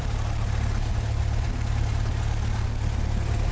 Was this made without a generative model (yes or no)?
yes